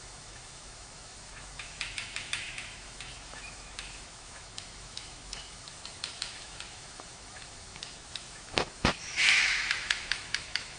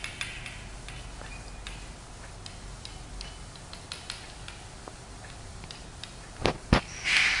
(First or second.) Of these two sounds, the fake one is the first